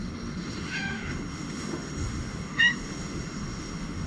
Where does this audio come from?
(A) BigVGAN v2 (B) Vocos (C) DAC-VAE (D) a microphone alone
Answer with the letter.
C